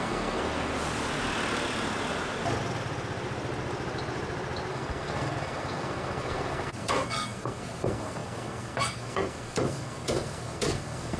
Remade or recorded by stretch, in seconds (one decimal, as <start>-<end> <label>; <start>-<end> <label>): 0.0-0.7 remade; 0.7-4.7 recorded; 4.7-11.2 remade